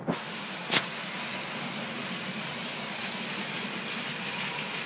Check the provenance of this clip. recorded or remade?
recorded